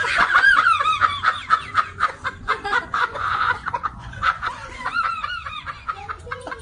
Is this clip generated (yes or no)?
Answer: yes